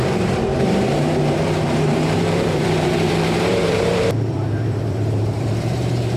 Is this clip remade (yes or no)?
yes